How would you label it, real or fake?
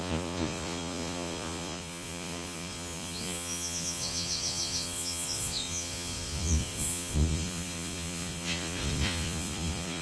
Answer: fake